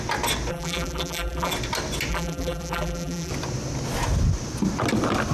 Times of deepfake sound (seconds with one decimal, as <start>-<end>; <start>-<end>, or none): 0.5-1.5; 2.1-3.3